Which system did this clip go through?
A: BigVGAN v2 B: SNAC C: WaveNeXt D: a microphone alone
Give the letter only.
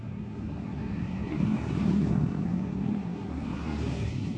B